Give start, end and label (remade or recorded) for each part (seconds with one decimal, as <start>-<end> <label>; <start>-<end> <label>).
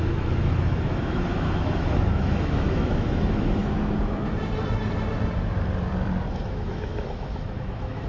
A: 0.0-3.6 remade; 3.6-6.3 recorded; 6.3-8.1 remade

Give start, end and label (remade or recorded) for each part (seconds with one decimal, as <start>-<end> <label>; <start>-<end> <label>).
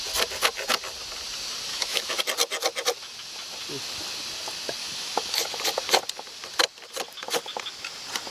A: 0.0-1.7 recorded; 1.7-2.2 remade; 2.2-4.8 recorded; 4.8-5.4 remade; 5.4-8.3 recorded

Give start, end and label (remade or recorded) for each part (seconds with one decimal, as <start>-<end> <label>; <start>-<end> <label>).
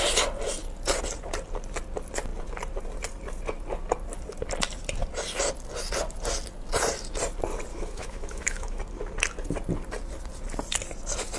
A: 0.0-7.7 recorded; 7.7-8.8 remade; 8.8-11.4 recorded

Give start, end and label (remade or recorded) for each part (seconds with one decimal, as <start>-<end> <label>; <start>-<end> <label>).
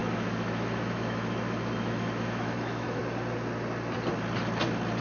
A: 0.0-3.0 remade; 3.0-5.0 recorded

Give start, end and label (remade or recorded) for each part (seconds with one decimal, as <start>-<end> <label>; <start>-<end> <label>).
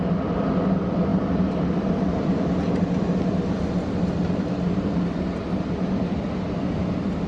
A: 0.0-7.3 recorded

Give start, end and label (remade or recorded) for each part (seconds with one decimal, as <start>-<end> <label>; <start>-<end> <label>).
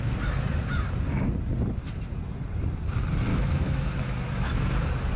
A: 0.0-3.3 recorded; 3.3-4.8 remade; 4.8-5.2 recorded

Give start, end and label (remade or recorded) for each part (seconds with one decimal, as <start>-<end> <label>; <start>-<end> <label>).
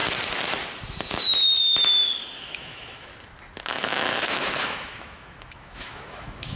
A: 0.0-2.4 recorded; 2.4-3.1 remade; 3.1-3.7 recorded; 3.7-6.6 remade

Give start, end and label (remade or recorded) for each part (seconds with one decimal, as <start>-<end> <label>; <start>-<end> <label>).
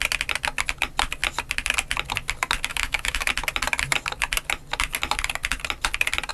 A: 0.0-2.7 recorded; 2.7-3.3 remade; 3.3-6.3 recorded